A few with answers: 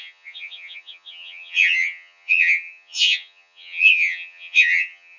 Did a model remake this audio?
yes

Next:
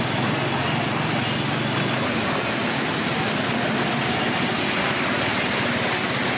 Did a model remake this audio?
no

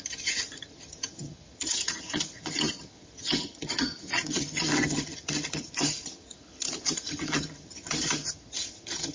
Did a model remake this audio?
yes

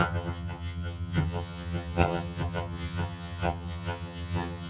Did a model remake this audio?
yes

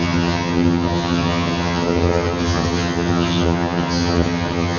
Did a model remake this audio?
yes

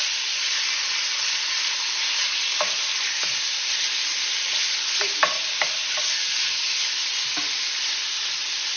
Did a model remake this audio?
no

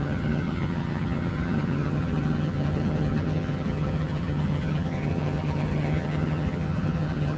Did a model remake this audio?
yes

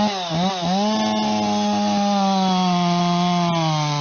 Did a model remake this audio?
no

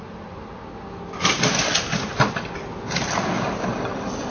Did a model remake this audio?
no